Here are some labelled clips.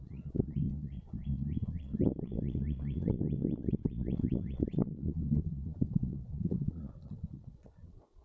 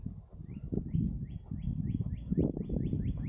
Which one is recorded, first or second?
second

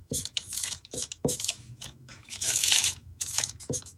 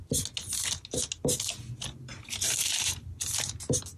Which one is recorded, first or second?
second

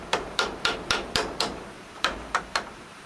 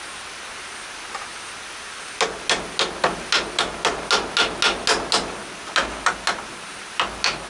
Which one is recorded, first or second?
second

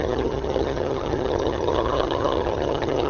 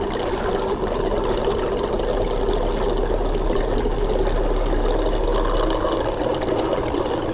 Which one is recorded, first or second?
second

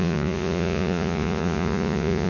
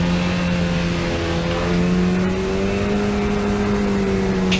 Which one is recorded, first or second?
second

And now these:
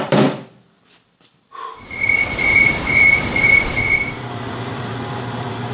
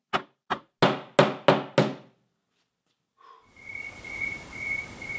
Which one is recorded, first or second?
second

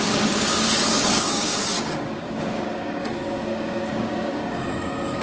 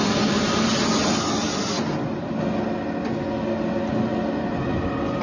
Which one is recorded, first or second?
second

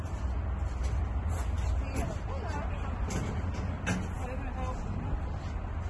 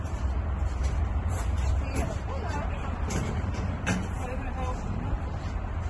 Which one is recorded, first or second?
first